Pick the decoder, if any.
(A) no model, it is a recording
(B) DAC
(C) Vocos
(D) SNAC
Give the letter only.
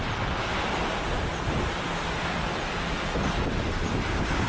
A